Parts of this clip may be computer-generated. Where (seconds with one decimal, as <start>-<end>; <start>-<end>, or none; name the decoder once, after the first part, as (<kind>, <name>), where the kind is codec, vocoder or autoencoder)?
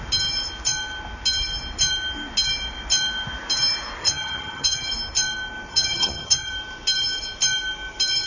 4.0-4.9 (vocoder, HiFi-GAN); 5.7-6.5